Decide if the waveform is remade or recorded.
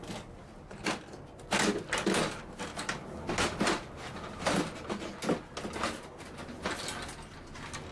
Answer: recorded